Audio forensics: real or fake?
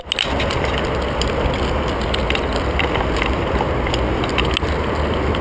real